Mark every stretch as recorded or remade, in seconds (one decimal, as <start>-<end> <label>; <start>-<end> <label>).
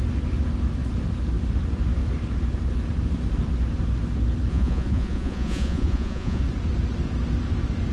0.0-4.5 recorded; 4.5-6.4 remade; 6.4-7.9 recorded